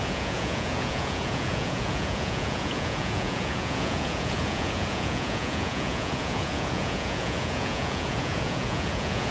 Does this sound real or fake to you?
fake